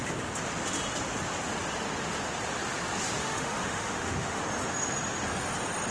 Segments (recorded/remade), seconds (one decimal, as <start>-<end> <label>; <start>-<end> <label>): 0.0-3.2 recorded; 3.2-4.4 remade; 4.4-5.9 recorded